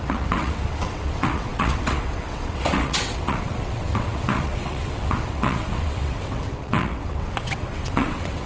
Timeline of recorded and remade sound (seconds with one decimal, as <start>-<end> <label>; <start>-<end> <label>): 0.0-8.5 remade